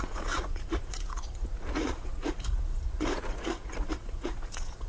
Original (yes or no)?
no